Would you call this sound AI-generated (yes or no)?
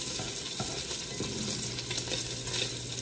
no